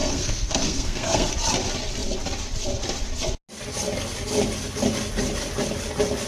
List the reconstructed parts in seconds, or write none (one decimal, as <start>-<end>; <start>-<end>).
0.0-1.3